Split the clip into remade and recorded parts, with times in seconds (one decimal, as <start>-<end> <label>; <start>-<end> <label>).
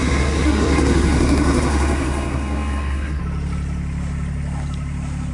0.0-3.2 remade; 3.2-5.3 recorded